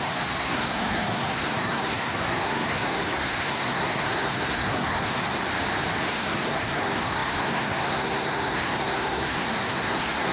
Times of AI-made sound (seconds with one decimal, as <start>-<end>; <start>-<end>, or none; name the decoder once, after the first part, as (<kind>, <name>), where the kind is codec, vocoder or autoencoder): 0.0-5.2 (codec, SNAC); 6.0-10.3